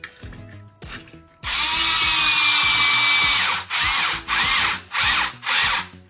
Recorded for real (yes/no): yes